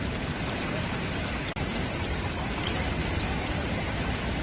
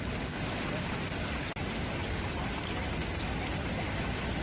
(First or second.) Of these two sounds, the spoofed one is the first